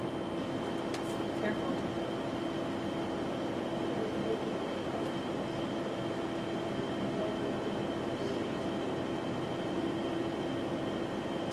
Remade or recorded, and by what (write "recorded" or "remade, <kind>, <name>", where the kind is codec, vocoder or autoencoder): recorded